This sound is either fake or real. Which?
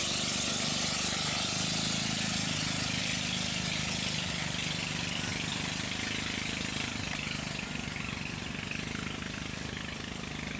real